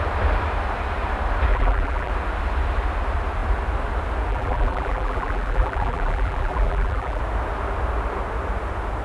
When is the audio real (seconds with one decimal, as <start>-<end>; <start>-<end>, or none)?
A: 0.0-1.5; 2.1-4.3; 7.2-9.0